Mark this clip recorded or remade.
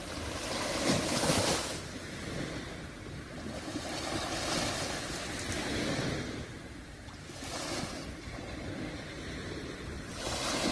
recorded